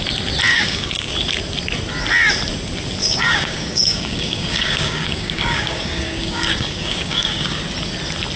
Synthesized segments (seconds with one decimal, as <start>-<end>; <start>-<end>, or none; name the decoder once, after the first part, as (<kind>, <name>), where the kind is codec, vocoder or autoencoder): 0.5-1.1 (codec, DAC); 3.0-7.6